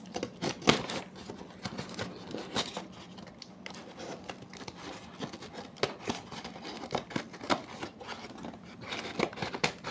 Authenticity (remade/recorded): recorded